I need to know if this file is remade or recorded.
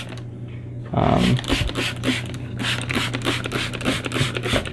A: recorded